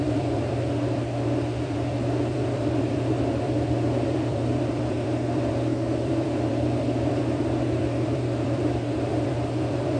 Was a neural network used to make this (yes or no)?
yes